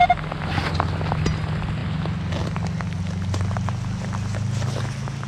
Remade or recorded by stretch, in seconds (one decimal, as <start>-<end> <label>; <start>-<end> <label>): 0.0-5.3 recorded